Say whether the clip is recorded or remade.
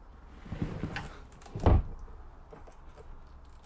recorded